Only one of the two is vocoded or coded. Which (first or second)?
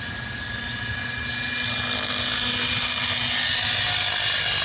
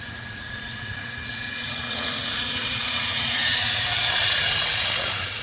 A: second